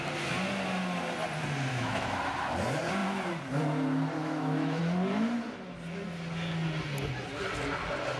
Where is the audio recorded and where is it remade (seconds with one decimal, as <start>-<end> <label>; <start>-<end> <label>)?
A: 0.0-1.7 recorded; 1.7-2.2 remade; 2.2-4.2 recorded; 4.2-4.8 remade; 4.8-8.2 recorded